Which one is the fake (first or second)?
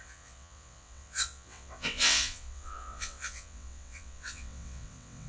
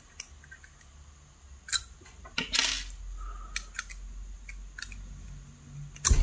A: first